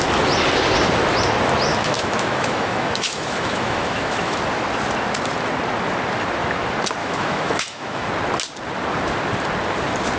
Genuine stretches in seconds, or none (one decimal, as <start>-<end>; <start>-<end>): 0.0-1.7; 4.4-7.0; 8.1-10.2